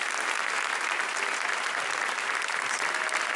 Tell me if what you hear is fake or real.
real